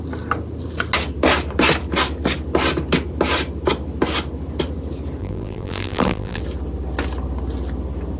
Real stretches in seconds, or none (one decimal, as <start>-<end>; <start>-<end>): 0.0-5.2; 6.4-8.2